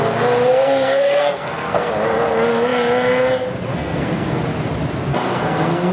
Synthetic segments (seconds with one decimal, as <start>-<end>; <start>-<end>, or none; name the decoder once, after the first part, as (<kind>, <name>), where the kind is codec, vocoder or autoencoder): 0.5-1.9 (codec, SNAC); 3.7-4.4; 5.1-5.9